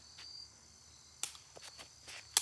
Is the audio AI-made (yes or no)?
no